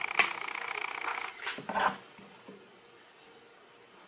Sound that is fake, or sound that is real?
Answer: real